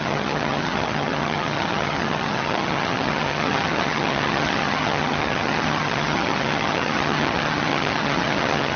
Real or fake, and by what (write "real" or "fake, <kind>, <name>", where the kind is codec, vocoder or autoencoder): fake, vocoder, HiFi-GAN